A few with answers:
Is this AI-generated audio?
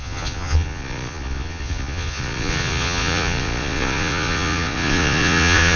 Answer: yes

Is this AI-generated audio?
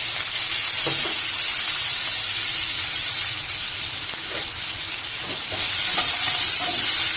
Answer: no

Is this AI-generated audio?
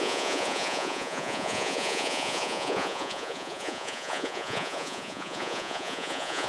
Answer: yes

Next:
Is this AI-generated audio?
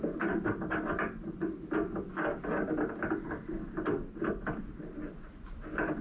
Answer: no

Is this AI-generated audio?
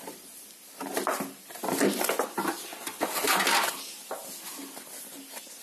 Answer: no